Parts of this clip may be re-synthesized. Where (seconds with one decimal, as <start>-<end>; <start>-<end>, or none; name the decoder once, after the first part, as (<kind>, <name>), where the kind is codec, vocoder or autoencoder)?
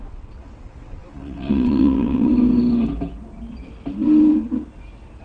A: 0.0-2.3 (vocoder, WaveNeXt)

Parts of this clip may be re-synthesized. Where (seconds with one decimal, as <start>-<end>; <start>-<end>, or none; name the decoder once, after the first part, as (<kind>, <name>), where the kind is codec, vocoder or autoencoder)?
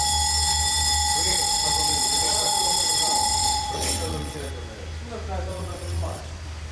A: 1.3-4.5 (vocoder, WaveNeXt); 5.5-6.2